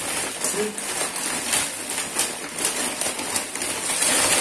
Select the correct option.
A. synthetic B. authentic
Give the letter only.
B